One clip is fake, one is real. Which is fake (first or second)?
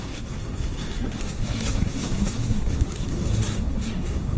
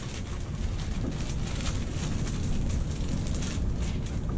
first